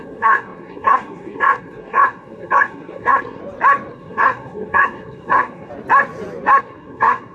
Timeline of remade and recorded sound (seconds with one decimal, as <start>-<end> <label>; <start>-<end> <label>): 0.0-3.4 remade; 3.4-3.9 recorded; 3.9-5.7 remade; 5.7-6.6 recorded; 6.6-7.3 remade